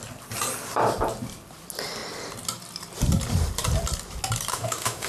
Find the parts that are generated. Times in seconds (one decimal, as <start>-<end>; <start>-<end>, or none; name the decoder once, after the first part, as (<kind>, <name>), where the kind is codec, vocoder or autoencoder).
4.5-5.1 (autoencoder, DAC-VAE)

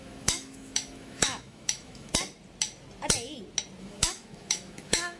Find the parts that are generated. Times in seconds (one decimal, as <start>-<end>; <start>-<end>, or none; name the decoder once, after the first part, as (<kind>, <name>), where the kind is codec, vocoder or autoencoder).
0.0-2.1 (autoencoder, DAC-VAE); 3.8-5.2

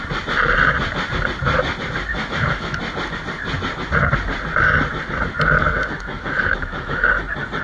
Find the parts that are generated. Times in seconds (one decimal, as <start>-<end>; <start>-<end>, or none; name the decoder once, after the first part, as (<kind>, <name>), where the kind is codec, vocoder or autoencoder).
2.1-2.8 (autoencoder, DAC-VAE); 5.6-7.1

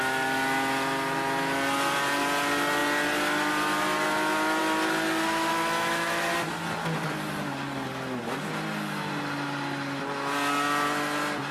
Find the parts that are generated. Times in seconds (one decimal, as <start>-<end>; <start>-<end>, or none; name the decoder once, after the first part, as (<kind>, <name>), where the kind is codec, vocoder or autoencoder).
5.5-6.3 (autoencoder, DAC-VAE)